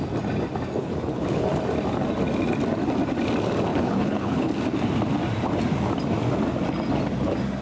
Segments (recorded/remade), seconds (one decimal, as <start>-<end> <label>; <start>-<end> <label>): 0.0-0.8 recorded; 0.8-1.5 remade; 1.5-3.7 recorded; 3.7-4.5 remade; 4.5-7.6 recorded